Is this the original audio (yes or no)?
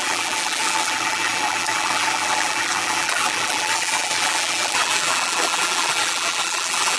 no